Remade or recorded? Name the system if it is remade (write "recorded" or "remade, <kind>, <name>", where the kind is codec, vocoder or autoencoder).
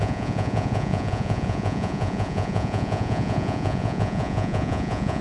remade, vocoder, Vocos